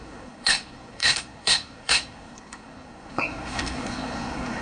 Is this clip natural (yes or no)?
no